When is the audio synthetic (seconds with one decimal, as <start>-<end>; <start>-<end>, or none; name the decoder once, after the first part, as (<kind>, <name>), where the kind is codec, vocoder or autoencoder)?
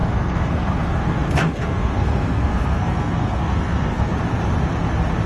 0.0-4.1 (codec, SNAC)